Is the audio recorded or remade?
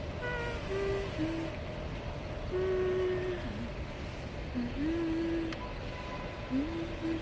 recorded